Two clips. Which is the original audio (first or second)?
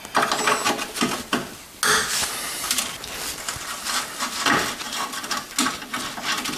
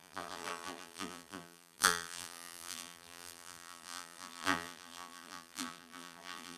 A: first